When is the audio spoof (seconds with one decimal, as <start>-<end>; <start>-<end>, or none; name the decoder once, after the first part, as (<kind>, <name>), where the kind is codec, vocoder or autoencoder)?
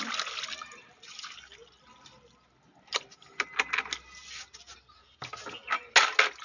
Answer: none